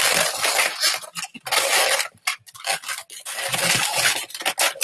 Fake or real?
real